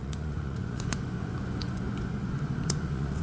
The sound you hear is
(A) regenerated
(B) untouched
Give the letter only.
A